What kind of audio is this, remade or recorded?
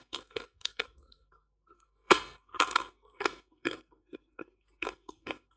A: remade